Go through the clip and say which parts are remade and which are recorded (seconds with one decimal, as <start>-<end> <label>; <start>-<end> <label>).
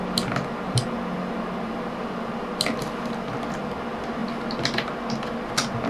0.0-5.9 recorded